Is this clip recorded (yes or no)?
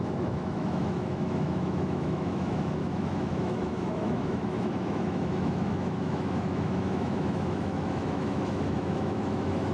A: no